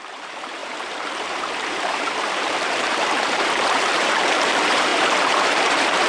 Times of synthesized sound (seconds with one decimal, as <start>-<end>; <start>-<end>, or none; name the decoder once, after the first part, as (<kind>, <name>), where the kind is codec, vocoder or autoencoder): 0.0-6.1 (vocoder, BigVGAN v2)